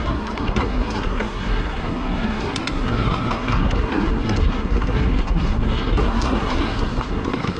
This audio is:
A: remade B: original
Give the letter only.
A